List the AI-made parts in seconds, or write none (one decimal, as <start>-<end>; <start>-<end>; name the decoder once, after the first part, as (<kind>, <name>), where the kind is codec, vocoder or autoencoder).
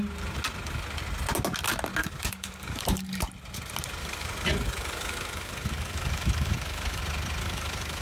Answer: 2.0-3.2 (codec, DAC); 4.0-7.0; 7.4-8.0